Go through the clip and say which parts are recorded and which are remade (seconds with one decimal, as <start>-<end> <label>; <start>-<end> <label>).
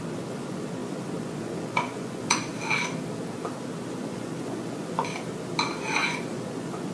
0.0-2.5 remade; 2.5-3.8 recorded; 3.8-5.1 remade; 5.1-5.8 recorded; 5.8-6.9 remade